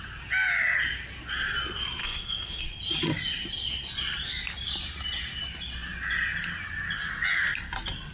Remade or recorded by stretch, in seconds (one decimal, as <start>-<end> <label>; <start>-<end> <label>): 0.0-2.0 recorded; 2.0-2.6 remade; 2.6-8.1 recorded